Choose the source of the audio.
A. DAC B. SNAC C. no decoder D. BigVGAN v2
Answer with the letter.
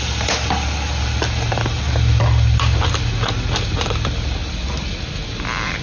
C